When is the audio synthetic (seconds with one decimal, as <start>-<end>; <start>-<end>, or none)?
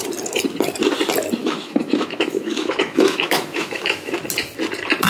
1.4-4.1